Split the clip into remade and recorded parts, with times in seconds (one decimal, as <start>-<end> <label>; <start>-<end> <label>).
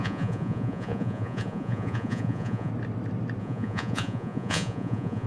0.0-2.7 remade; 2.7-3.4 recorded; 3.4-5.3 remade